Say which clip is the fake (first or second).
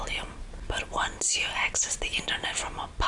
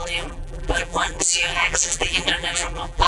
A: second